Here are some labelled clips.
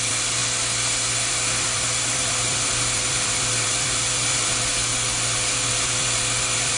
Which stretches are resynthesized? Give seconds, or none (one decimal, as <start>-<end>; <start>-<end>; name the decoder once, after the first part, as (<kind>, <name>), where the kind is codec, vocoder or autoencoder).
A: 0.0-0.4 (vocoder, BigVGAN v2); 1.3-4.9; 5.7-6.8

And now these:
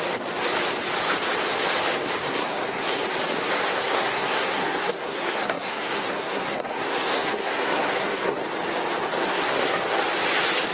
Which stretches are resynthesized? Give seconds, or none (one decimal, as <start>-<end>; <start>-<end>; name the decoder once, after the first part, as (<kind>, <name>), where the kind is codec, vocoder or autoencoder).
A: 2.2-3.0 (codec, SNAC); 3.7-8.4; 9.2-9.8

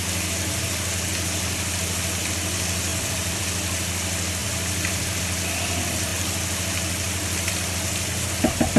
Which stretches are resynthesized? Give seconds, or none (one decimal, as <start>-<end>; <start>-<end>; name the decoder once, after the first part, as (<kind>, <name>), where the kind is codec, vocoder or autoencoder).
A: 2.9-3.4 (vocoder, BigVGAN v2); 4.4-5.2

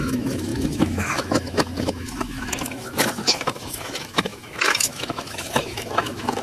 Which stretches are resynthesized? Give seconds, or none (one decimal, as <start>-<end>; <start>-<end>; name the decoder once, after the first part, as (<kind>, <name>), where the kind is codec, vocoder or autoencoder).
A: 0.0-6.4 (autoencoder, DAC-VAE)

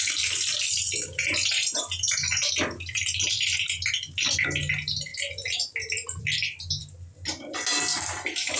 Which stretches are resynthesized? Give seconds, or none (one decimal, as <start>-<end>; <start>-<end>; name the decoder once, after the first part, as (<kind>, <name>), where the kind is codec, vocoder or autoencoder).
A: none

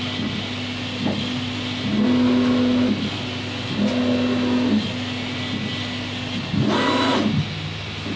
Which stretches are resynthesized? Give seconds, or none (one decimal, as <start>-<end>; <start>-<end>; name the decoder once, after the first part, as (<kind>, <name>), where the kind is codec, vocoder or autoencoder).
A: none